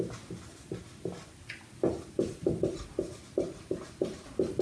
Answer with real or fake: real